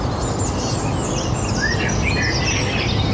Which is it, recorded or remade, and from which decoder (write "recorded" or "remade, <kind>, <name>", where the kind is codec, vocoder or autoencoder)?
recorded